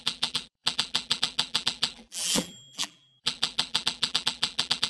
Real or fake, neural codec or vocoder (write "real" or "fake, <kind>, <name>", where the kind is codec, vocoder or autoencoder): fake, vocoder, BigVGAN v2